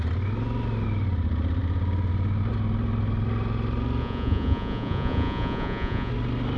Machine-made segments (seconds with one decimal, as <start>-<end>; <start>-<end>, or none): 4.0-6.1